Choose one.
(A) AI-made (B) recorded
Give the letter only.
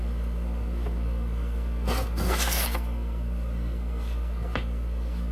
A